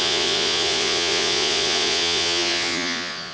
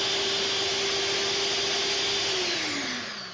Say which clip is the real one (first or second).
second